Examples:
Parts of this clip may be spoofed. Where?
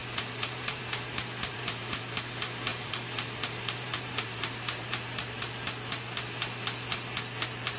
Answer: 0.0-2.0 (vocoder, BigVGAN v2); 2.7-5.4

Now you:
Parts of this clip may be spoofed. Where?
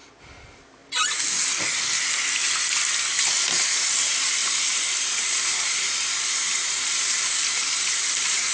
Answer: 0.0-0.8 (vocoder, BigVGAN v2); 3.4-8.5